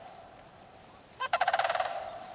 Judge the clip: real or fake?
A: fake